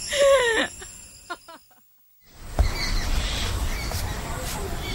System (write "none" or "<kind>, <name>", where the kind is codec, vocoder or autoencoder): none